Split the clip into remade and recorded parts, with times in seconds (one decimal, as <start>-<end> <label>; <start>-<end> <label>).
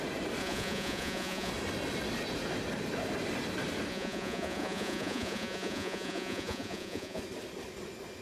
0.0-0.4 recorded; 0.4-1.5 remade; 1.5-3.9 recorded; 3.9-7.2 remade; 7.2-8.2 recorded